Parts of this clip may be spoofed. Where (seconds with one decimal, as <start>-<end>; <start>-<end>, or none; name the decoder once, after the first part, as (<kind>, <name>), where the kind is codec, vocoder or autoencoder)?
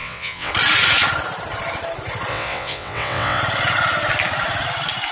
0.0-0.5 (vocoder, WaveNeXt); 2.3-3.4